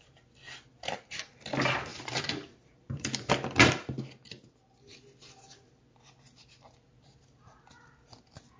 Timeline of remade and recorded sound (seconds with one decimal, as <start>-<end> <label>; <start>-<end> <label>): 0.0-0.7 recorded; 0.7-1.3 remade; 1.3-1.9 recorded; 1.9-3.3 remade; 3.3-8.6 recorded